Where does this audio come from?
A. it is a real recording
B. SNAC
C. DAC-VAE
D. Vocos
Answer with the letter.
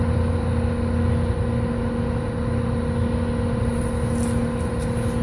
A